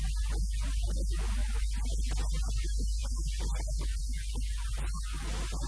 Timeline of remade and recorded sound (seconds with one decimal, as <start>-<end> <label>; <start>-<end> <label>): 0.0-5.7 recorded